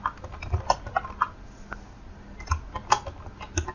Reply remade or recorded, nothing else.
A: recorded